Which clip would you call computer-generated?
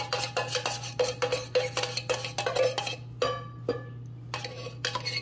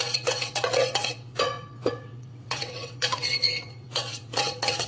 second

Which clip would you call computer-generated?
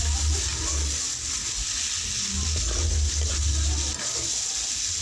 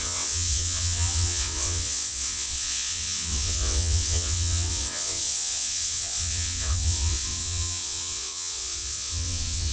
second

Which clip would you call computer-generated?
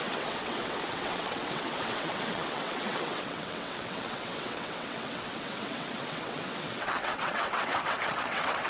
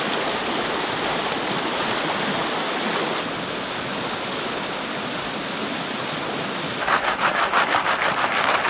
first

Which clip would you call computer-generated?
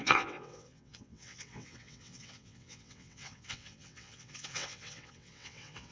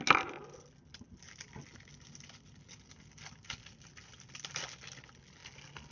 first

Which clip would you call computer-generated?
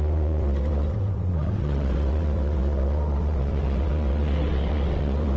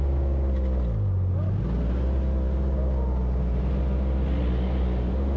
first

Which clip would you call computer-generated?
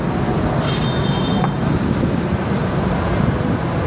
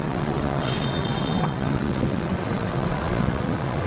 second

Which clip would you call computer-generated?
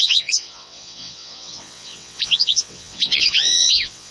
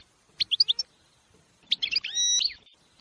first